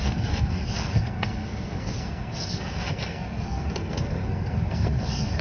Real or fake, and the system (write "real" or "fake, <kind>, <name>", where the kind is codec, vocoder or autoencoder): fake, codec, SNAC